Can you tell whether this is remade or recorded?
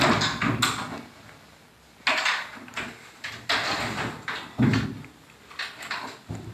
recorded